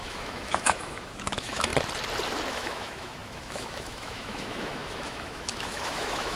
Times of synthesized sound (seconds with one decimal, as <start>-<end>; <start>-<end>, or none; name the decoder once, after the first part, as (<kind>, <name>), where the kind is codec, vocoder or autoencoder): 0.0-1.7 (autoencoder, DAC-VAE); 2.5-6.4